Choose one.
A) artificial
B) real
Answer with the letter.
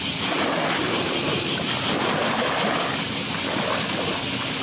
B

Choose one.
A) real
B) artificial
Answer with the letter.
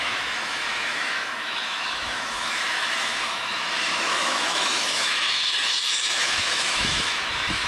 B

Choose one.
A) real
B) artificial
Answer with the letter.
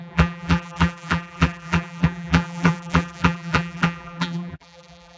B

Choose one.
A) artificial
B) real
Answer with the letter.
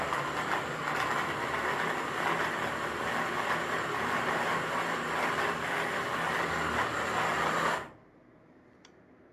B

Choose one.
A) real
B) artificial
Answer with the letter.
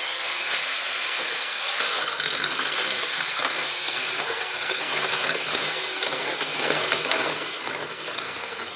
B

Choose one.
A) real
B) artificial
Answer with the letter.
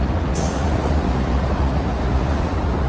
B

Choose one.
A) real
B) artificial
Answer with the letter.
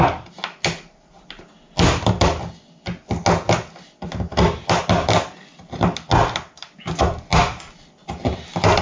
A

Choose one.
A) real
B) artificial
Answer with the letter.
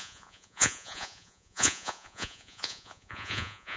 B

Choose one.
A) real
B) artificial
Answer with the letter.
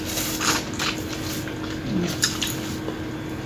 A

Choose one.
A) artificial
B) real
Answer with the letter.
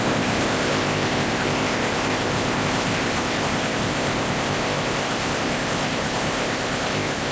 A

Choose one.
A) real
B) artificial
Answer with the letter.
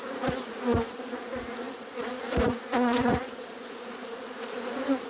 B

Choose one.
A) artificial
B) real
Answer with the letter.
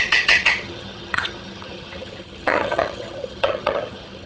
A